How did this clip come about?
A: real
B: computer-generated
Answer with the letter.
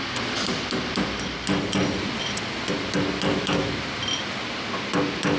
A